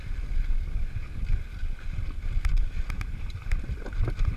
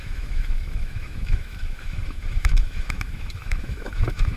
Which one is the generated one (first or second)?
second